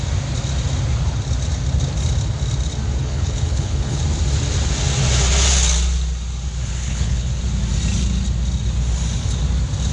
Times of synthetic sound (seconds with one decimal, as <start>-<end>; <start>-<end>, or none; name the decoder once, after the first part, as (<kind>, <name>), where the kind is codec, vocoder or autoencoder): 3.0-4.0 (codec, HILCodec); 6.6-7.4